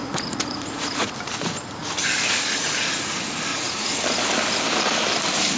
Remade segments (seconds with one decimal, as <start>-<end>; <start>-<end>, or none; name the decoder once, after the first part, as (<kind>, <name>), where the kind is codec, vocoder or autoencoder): 0.0-1.1 (vocoder, Vocos); 3.5-4.0